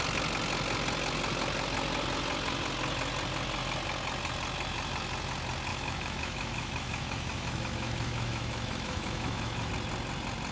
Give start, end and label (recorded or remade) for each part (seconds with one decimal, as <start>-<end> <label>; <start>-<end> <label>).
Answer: 0.0-5.7 recorded; 5.7-9.7 remade; 9.7-10.5 recorded